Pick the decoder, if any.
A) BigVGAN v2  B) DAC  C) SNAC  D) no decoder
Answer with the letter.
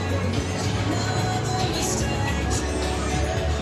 D